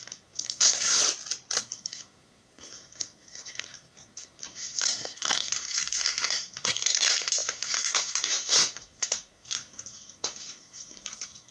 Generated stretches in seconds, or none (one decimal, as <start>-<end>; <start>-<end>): 0.0-1.0; 1.6-11.5